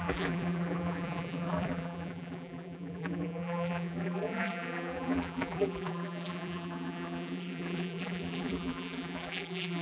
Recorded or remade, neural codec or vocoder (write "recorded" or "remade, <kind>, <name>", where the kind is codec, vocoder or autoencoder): remade, vocoder, BigVGAN v2